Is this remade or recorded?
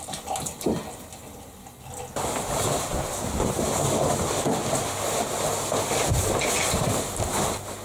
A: recorded